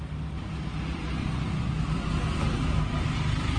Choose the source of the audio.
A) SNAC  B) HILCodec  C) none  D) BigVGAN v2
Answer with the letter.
D